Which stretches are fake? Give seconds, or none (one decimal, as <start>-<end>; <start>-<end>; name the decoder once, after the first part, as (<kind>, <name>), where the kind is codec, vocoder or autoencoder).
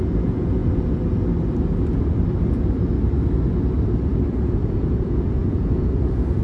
0.0-0.6 (vocoder, Vocos); 4.4-6.4